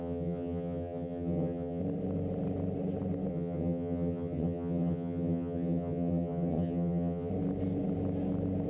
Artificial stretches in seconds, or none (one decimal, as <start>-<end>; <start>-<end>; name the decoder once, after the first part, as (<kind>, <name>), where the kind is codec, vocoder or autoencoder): 0.0-1.8 (vocoder, HiFi-GAN); 3.3-7.3